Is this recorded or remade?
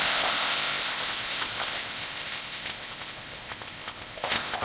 remade